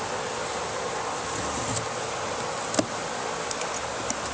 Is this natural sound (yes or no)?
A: yes